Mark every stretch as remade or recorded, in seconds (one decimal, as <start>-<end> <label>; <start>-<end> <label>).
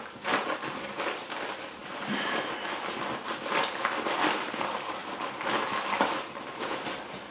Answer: 0.0-7.3 recorded